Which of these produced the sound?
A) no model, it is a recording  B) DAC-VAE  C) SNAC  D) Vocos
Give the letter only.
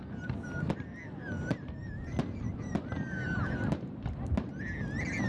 A